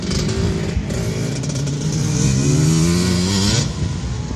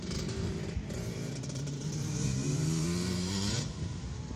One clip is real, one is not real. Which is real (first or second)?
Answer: first